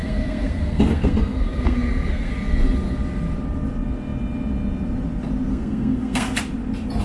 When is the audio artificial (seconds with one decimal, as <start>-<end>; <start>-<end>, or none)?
0.0-2.3; 5.5-6.4